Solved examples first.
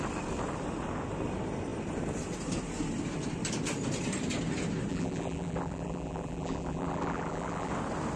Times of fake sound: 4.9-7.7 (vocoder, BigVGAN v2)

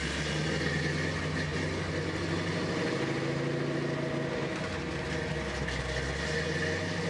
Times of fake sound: none

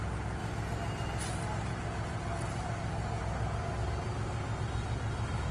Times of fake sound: none

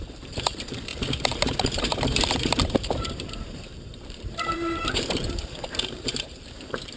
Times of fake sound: 0.0-7.0 (vocoder, BigVGAN v2)

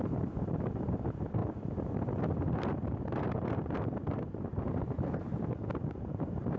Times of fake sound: 0.0-1.4 (vocoder, BigVGAN v2); 3.2-6.6

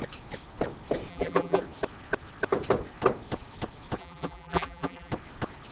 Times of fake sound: 1.1-1.6 (vocoder, BigVGAN v2); 4.0-5.1

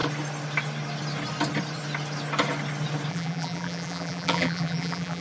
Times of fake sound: 3.1-5.2 (vocoder, BigVGAN v2)

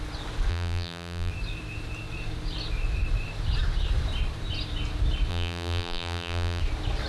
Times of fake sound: 0.5-1.3 (vocoder, BigVGAN v2); 5.3-6.6